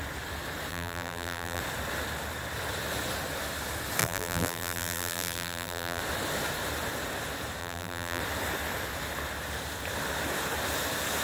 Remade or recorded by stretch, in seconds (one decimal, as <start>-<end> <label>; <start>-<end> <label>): 0.0-0.7 recorded; 0.7-1.6 remade; 1.6-4.0 recorded; 4.0-6.0 remade; 6.0-7.6 recorded; 7.6-8.2 remade; 8.2-11.2 recorded